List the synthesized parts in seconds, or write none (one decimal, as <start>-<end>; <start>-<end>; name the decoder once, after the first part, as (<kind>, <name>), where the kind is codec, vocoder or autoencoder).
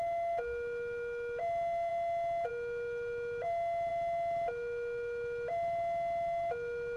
none